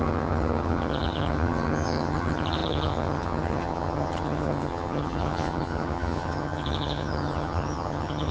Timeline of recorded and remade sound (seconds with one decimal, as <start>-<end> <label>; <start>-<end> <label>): 0.0-8.3 remade